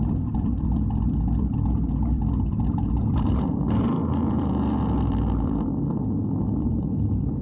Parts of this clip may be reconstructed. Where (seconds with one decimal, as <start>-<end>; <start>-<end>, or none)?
0.0-7.4